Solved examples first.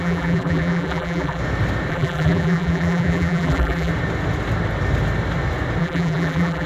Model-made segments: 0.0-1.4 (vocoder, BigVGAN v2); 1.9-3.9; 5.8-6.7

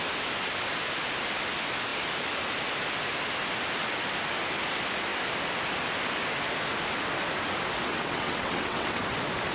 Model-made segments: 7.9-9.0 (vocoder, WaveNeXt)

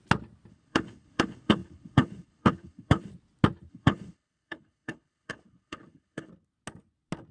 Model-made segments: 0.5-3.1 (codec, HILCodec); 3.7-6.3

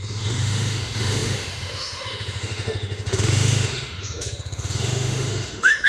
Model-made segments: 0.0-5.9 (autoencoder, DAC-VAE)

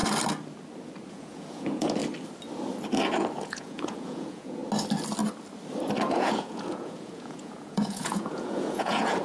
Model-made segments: 1.1-2.0 (vocoder, Vocos); 3.4-4.6; 6.1-9.2

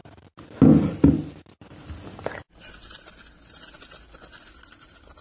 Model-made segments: none

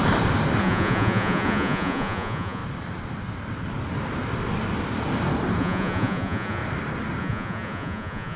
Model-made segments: 0.6-2.6 (vocoder, Vocos); 5.6-6.6; 7.2-8.4

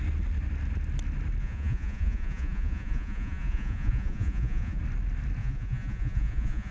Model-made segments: 1.4-4.8 (vocoder, Vocos); 5.4-6.7